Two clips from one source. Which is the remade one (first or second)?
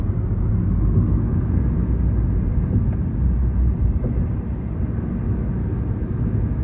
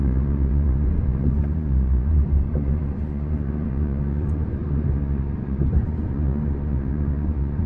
second